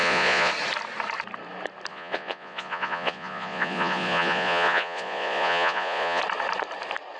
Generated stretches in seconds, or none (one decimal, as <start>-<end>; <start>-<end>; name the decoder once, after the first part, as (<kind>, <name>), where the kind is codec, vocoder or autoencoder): 0.0-0.5 (vocoder, Vocos); 1.9-6.2